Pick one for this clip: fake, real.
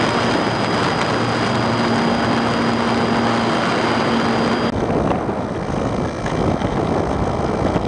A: real